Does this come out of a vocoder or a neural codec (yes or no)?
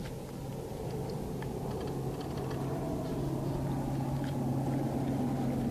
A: no